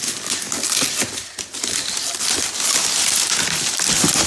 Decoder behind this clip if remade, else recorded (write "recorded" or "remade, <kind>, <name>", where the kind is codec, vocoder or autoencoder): recorded